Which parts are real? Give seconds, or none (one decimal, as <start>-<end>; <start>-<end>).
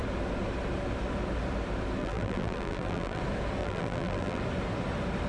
0.0-2.0; 3.2-3.6; 4.4-5.3